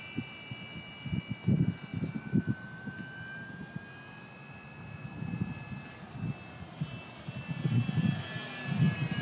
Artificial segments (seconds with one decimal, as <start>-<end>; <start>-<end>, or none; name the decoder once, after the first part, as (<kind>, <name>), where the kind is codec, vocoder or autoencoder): none